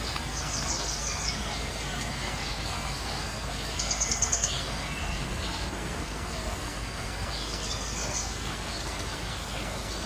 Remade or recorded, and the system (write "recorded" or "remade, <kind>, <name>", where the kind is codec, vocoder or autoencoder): remade, codec, SNAC